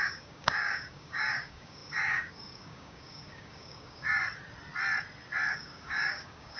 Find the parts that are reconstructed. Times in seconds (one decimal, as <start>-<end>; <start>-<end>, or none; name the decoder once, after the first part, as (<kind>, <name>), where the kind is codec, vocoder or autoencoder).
0.0-4.2 (codec, DAC); 5.5-6.6